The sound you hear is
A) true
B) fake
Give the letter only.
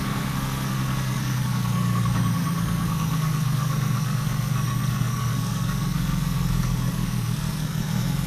B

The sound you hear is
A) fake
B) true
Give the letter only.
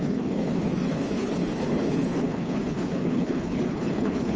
A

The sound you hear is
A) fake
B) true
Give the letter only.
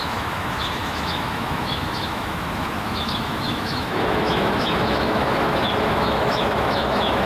A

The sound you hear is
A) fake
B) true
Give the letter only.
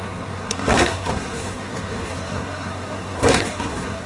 A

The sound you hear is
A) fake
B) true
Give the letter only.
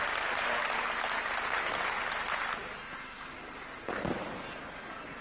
B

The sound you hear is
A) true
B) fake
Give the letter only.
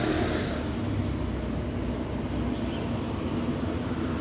A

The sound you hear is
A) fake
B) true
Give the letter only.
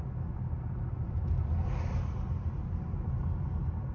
B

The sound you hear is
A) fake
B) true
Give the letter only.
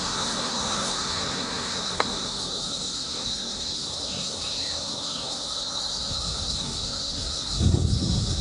A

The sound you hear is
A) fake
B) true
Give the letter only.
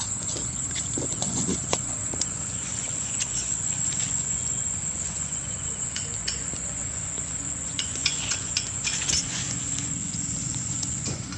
A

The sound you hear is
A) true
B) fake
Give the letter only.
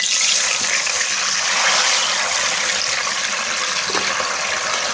A